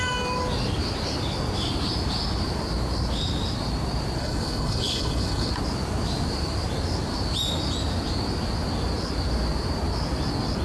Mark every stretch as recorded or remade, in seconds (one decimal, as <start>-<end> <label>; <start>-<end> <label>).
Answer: 0.0-4.2 recorded; 4.2-5.5 remade; 5.5-10.6 recorded